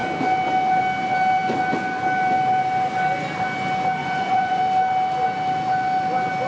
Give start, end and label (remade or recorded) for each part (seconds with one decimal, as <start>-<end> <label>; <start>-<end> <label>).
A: 0.0-4.0 recorded; 4.0-4.6 remade; 4.6-6.5 recorded